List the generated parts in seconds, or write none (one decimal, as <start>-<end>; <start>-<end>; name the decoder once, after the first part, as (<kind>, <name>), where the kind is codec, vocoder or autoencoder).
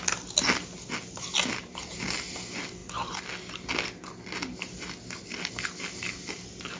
none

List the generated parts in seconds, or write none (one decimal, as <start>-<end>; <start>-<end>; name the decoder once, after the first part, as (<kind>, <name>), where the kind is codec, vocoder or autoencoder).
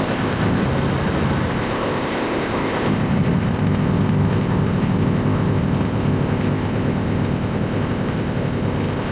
0.0-0.6 (codec, ZipCodec); 1.5-9.1